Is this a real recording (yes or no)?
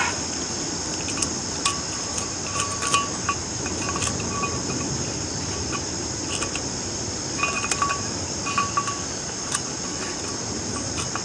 yes